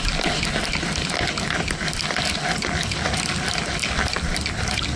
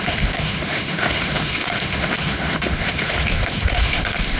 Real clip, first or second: first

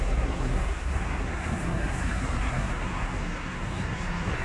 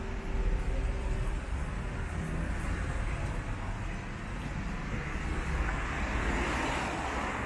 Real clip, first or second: second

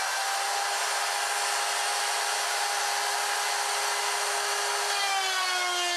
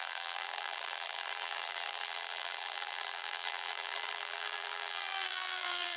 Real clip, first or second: first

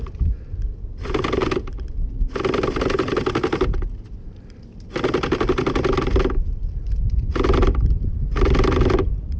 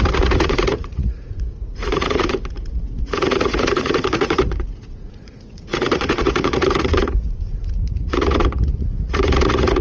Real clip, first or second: first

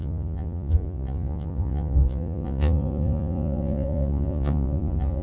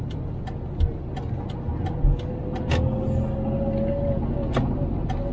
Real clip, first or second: second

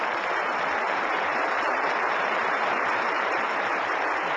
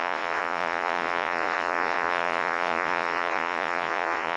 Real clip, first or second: first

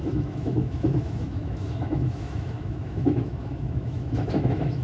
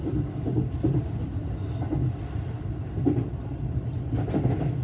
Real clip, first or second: second